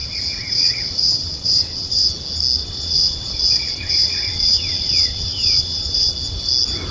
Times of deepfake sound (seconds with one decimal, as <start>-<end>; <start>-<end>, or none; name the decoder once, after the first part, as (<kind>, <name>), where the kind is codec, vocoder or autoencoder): 0.0-2.1 (vocoder, WaveNeXt); 2.6-6.1